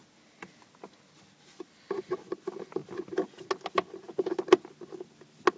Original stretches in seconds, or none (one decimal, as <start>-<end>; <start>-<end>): 0.0-5.6